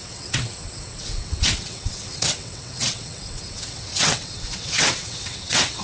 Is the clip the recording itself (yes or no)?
no